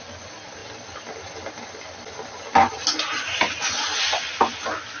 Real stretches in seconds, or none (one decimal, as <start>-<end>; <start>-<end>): 0.0-5.0